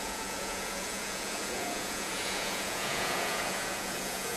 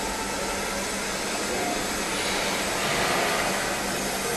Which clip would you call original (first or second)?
second